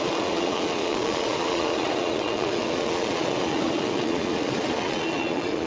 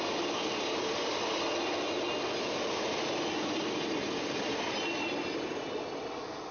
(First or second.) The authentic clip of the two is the second